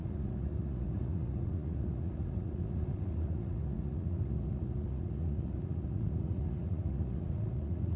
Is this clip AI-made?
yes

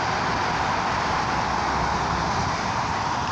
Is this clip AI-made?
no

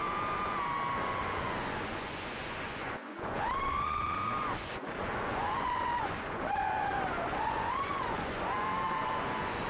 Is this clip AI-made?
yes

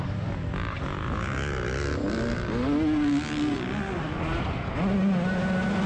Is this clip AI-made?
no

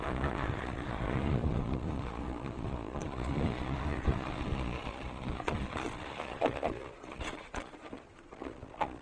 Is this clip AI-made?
yes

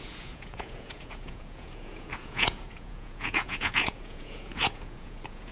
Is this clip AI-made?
yes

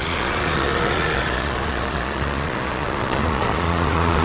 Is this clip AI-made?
yes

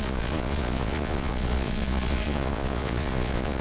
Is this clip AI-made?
yes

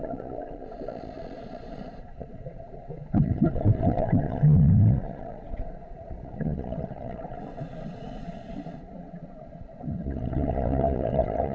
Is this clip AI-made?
yes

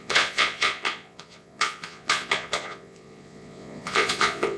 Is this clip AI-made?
yes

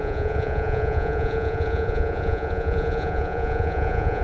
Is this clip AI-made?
yes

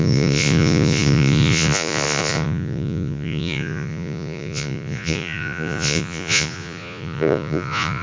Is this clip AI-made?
yes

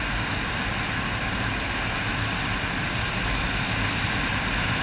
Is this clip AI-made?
no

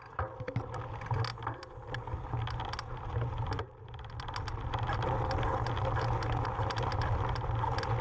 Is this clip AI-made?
no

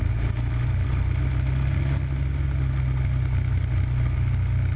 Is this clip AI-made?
no